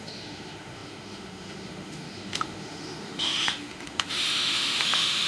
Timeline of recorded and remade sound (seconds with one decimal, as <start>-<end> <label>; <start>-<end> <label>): 0.0-5.3 remade